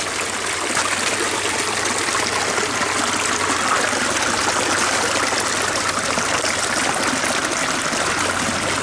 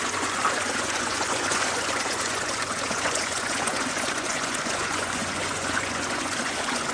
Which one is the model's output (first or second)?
second